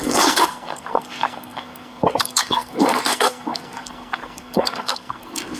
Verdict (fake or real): fake